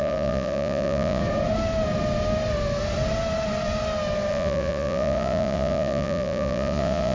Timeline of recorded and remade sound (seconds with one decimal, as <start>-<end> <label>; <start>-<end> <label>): 0.0-1.2 remade; 1.2-4.3 recorded; 4.3-7.1 remade